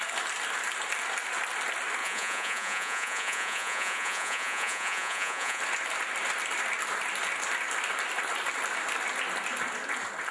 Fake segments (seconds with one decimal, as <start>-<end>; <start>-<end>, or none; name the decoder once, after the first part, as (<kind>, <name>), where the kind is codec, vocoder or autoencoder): 2.0-5.6 (vocoder, Vocos)